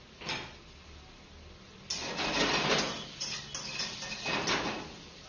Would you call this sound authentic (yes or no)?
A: yes